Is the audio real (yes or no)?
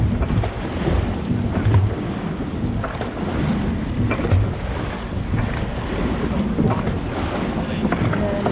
yes